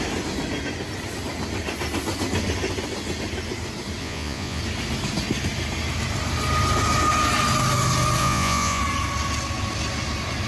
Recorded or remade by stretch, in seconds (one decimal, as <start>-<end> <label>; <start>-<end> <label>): 0.0-4.0 recorded; 4.0-4.6 remade; 4.6-8.2 recorded; 8.2-8.8 remade; 8.8-10.5 recorded